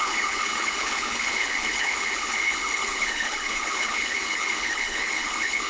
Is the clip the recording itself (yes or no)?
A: no